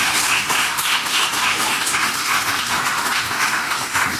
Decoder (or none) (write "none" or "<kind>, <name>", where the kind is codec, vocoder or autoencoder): autoencoder, DAC-VAE